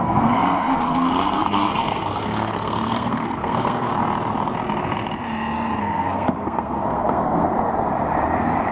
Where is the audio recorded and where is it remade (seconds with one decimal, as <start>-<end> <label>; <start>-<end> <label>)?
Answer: 0.0-3.9 remade; 3.9-5.8 recorded; 5.8-7.5 remade; 7.5-8.7 recorded